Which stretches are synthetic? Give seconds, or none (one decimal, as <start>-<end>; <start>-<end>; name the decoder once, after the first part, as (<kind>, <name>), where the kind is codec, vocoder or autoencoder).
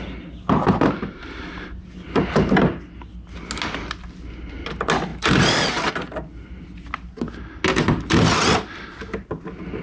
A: none